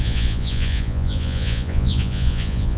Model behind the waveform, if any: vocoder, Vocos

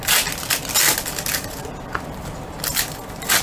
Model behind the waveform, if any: none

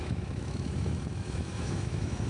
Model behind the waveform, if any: autoencoder, DAC-VAE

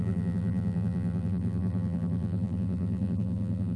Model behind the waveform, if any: vocoder, BigVGAN v2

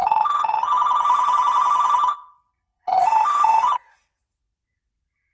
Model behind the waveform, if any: vocoder, WaveNeXt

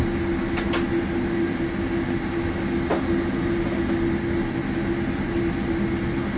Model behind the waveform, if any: none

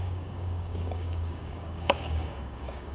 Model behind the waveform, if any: codec, DAC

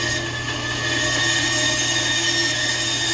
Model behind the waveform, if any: none